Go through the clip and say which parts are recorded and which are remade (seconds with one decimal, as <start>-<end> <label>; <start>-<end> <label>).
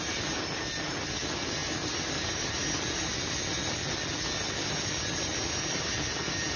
0.0-1.6 recorded; 1.6-2.5 remade; 2.5-6.6 recorded